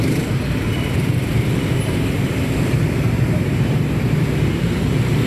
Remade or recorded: remade